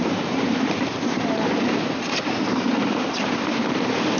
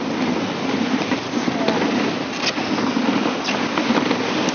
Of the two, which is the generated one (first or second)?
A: first